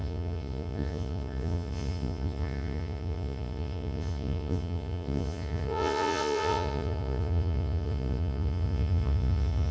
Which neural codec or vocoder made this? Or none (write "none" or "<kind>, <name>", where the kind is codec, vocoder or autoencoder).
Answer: vocoder, Vocos